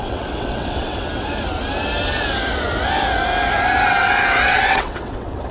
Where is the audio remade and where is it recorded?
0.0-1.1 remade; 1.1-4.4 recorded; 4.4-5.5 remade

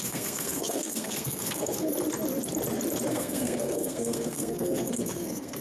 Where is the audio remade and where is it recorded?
0.0-1.9 remade; 1.9-3.1 recorded; 3.1-5.6 remade